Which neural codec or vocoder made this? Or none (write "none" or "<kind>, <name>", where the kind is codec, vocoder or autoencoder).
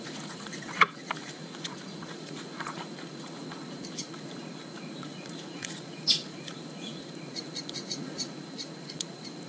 vocoder, Vocos